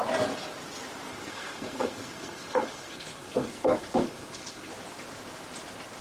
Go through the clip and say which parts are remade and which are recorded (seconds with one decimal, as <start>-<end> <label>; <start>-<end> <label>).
0.0-1.1 recorded; 1.1-4.7 remade; 4.7-6.0 recorded